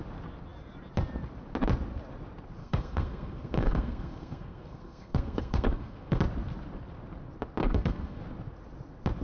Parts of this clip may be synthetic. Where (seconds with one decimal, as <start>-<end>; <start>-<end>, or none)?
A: 2.6-6.2; 7.6-8.2